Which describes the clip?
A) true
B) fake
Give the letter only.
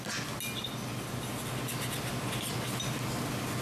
A